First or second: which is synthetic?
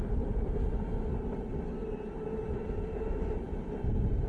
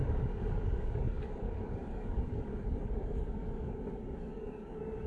second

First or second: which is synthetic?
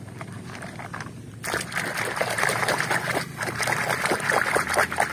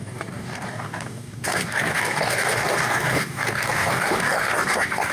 second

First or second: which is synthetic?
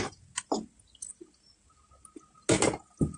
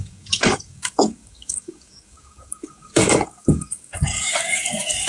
second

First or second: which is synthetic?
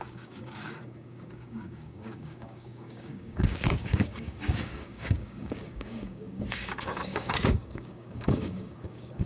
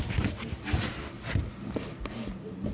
first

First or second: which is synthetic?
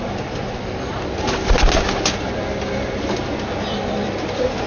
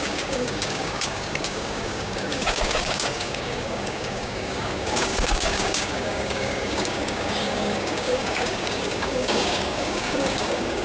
second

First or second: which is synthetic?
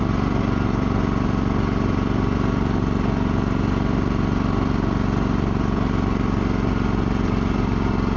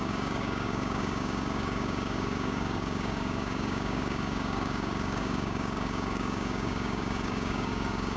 second